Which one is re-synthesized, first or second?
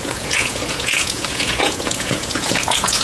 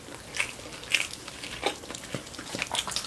first